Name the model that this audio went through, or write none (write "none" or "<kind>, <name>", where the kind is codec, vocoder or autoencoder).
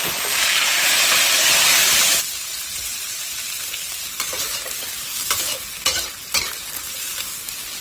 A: vocoder, BigVGAN v2